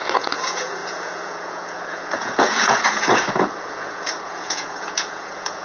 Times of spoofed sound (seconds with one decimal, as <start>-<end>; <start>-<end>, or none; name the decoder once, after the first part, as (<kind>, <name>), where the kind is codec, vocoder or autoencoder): 0.0-5.6 (vocoder, Vocos)